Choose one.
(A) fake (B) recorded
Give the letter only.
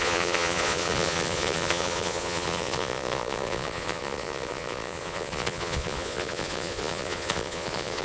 A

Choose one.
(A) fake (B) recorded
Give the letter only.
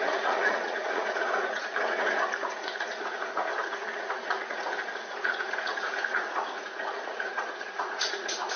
A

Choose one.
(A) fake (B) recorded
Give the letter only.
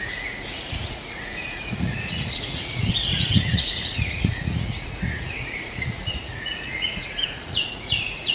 A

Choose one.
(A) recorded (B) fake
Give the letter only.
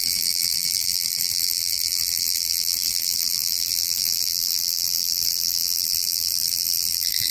B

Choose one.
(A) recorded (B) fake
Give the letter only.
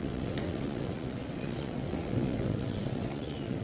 B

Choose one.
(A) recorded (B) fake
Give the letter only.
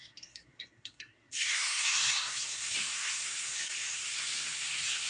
B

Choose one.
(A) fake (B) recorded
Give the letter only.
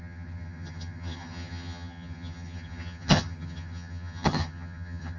A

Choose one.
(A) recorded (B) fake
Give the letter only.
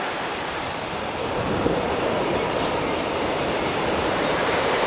B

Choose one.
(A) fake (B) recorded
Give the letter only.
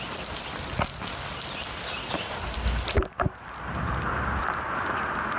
B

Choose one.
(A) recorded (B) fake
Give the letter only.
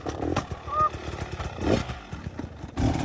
A